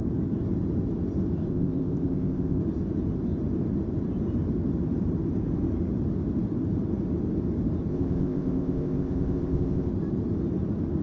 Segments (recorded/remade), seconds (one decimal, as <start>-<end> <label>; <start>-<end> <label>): 0.0-1.5 recorded; 1.5-2.6 remade; 2.6-7.9 recorded; 7.9-9.9 remade; 9.9-11.0 recorded